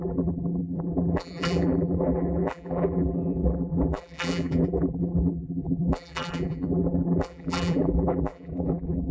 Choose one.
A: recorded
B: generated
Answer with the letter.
B